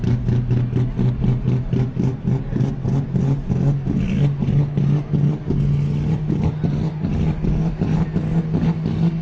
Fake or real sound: real